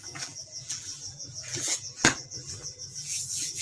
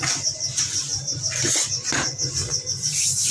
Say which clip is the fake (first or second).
first